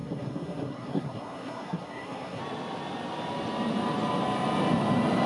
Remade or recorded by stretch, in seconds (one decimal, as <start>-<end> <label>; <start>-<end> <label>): 0.0-2.4 remade; 2.4-5.3 recorded